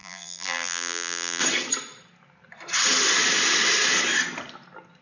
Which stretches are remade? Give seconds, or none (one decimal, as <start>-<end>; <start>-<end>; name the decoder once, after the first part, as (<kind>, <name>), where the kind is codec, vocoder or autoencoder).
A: 0.0-1.4 (vocoder, BigVGAN v2)